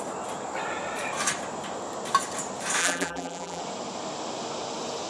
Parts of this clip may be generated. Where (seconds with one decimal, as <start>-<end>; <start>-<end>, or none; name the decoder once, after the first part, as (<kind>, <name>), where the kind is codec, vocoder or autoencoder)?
2.8-3.6 (vocoder, BigVGAN v2)